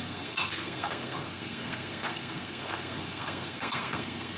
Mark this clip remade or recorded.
remade